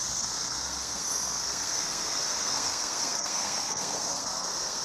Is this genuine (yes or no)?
no